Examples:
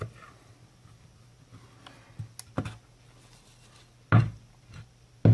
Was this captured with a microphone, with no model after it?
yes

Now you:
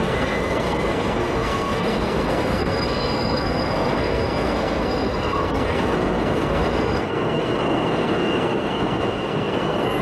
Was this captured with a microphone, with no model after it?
no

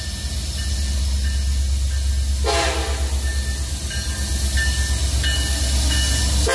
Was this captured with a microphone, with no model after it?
yes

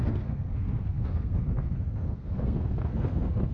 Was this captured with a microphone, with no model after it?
no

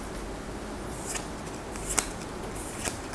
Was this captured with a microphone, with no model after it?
yes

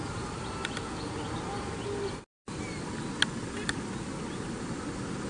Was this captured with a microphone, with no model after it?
yes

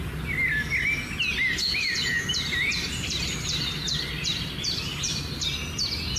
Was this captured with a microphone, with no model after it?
yes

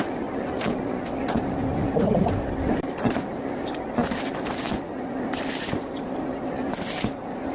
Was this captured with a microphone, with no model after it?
yes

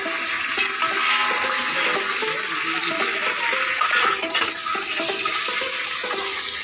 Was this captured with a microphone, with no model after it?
yes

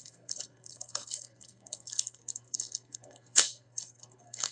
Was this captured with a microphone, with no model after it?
no